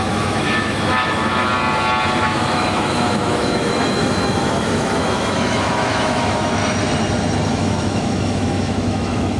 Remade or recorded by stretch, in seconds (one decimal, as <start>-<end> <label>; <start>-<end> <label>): 0.0-1.5 remade; 1.5-2.2 recorded; 2.2-6.6 remade; 6.6-7.5 recorded; 7.5-9.4 remade